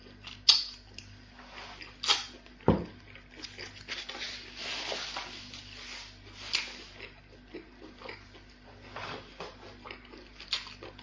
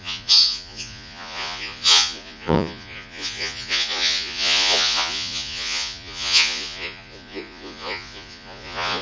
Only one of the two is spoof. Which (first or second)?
second